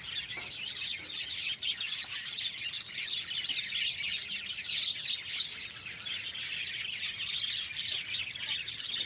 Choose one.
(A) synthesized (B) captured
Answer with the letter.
B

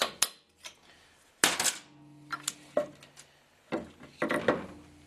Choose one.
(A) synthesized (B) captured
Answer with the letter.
B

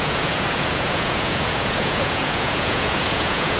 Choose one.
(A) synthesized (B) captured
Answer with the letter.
A